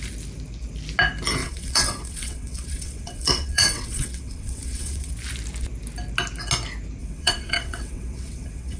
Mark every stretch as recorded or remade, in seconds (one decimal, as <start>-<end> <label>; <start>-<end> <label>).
0.0-1.4 recorded; 1.4-5.1 remade; 5.1-7.0 recorded; 7.0-8.8 remade